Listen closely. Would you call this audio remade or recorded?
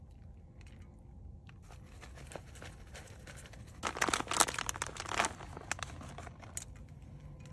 recorded